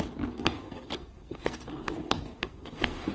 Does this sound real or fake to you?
fake